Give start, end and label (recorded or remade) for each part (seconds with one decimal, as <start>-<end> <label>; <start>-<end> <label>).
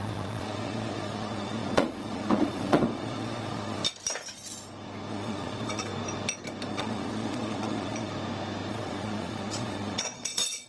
0.0-3.8 remade; 3.8-5.1 recorded; 5.1-5.9 remade; 5.9-6.7 recorded; 6.7-8.1 remade; 8.1-8.7 recorded; 8.7-10.7 remade